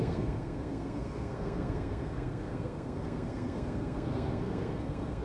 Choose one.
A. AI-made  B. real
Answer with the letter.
A